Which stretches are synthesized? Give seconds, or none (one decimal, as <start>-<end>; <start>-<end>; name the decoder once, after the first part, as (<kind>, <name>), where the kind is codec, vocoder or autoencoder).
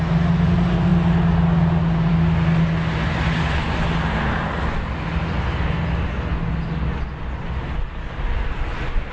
none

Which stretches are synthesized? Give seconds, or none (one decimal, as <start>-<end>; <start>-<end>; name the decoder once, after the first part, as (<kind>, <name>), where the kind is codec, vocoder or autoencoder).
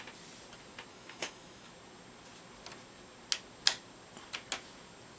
0.9-1.7 (autoencoder, DAC-VAE)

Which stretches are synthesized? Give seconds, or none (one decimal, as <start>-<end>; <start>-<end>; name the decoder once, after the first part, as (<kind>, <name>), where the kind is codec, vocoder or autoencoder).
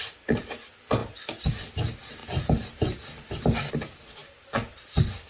1.0-1.5 (vocoder, BigVGAN v2)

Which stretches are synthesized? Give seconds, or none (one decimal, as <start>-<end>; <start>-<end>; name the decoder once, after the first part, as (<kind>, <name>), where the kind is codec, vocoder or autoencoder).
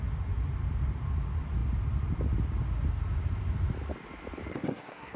4.5-5.2 (codec, SNAC)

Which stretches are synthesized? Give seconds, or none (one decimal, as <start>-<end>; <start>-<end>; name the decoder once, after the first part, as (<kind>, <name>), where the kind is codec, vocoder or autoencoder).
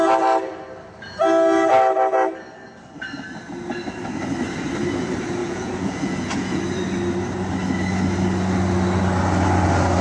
5.4-6.6 (vocoder, Vocos)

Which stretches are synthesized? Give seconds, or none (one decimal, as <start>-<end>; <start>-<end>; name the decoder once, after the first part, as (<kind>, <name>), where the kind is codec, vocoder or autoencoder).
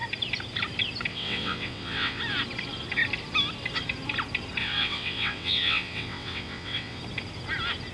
1.1-2.2 (vocoder, WaveNeXt); 4.6-7.0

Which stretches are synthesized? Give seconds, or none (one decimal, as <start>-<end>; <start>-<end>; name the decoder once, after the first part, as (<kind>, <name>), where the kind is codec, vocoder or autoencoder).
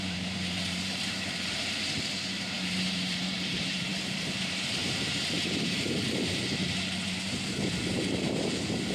0.0-8.9 (vocoder, BigVGAN v2)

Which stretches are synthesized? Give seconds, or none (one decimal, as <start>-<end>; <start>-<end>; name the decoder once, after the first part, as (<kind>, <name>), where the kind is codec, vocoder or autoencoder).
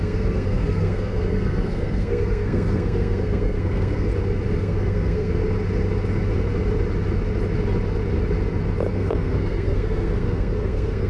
0.0-4.1 (codec, SNAC); 4.6-5.3; 8.9-11.1